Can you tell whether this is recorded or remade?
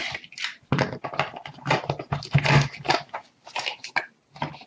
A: recorded